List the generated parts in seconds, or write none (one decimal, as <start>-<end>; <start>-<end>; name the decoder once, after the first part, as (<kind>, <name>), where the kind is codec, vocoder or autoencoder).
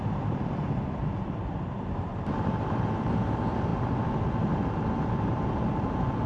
0.0-6.3 (vocoder, BigVGAN v2)